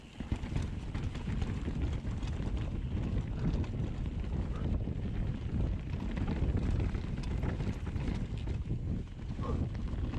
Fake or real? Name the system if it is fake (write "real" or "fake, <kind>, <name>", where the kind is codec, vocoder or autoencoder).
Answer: real